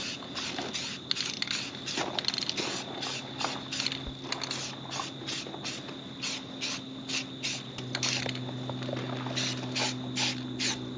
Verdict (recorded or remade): recorded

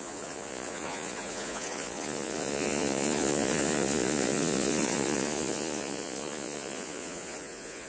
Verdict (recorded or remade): remade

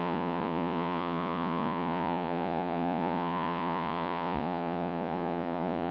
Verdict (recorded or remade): remade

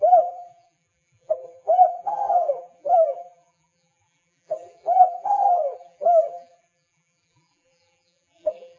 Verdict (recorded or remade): remade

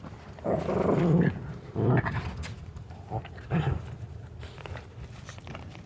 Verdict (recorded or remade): remade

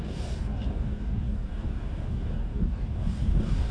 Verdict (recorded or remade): remade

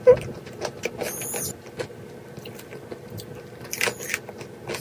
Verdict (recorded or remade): recorded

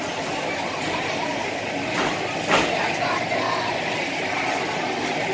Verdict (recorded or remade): recorded